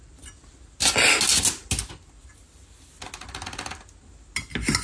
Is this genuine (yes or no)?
yes